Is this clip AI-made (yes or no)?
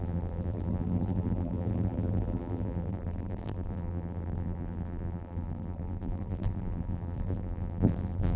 yes